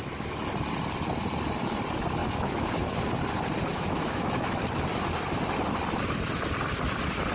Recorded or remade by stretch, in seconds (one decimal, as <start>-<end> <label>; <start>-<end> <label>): 0.0-2.2 recorded; 2.2-3.0 remade; 3.0-3.7 recorded; 3.7-4.6 remade; 4.6-7.3 recorded